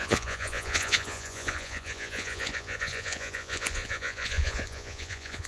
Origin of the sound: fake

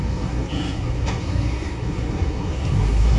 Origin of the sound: fake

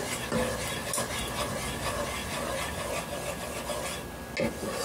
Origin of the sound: real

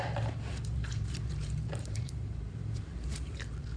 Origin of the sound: fake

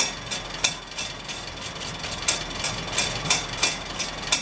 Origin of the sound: real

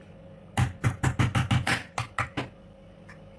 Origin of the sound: real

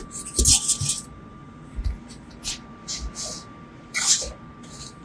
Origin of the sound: real